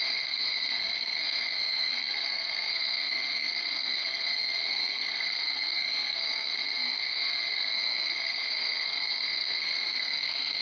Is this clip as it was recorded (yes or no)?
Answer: no